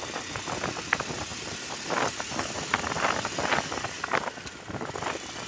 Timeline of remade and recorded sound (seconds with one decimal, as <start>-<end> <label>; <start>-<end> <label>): 0.0-5.5 recorded